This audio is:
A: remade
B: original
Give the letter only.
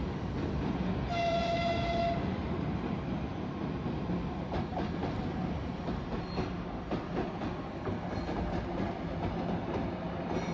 B